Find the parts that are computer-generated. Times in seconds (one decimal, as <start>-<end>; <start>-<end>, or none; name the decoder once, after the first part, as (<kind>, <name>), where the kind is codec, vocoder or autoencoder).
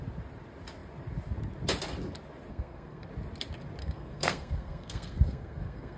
2.5-3.1 (codec, SNAC); 3.8-6.0